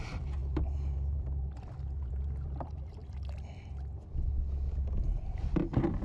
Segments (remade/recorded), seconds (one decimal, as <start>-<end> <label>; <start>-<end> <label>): 0.0-3.0 remade; 3.0-5.2 recorded; 5.2-6.0 remade